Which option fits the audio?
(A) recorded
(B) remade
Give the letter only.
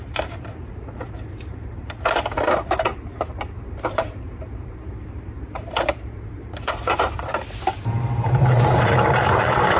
B